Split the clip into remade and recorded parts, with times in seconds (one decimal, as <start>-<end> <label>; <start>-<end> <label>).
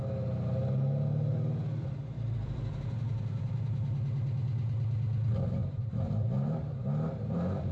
0.0-1.3 recorded; 1.3-2.8 remade; 2.8-5.6 recorded; 5.6-7.7 remade